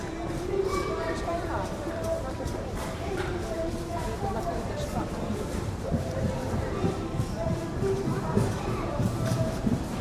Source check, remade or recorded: remade